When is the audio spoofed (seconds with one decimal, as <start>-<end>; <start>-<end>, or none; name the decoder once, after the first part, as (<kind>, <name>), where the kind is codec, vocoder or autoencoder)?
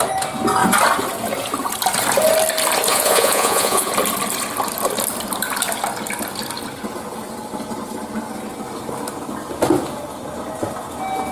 2.9-3.9 (vocoder, Vocos)